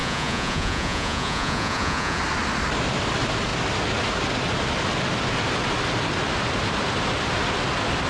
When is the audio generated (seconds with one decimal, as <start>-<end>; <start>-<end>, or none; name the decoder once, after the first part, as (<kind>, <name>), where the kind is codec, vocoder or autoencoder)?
0.0-2.2 (vocoder, Vocos)